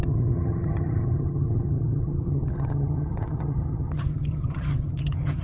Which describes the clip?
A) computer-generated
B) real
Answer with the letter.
A